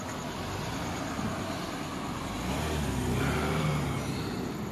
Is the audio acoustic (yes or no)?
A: yes